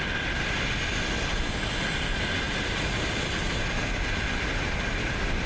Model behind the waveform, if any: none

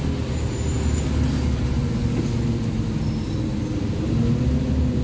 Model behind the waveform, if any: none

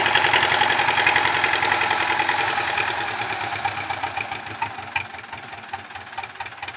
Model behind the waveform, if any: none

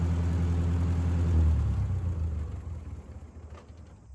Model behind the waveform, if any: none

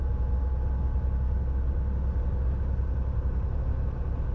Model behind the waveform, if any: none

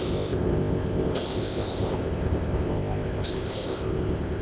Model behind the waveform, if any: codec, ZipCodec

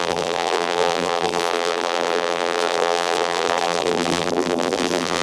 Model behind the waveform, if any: vocoder, BigVGAN v2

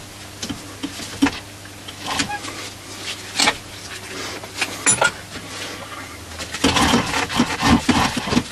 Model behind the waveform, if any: none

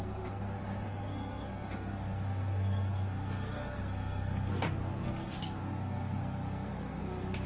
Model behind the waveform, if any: codec, SNAC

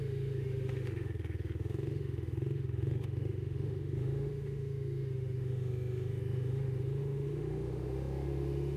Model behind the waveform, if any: autoencoder, DAC-VAE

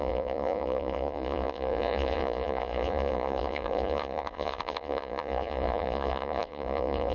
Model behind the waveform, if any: vocoder, Vocos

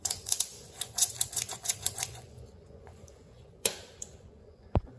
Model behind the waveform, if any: vocoder, Vocos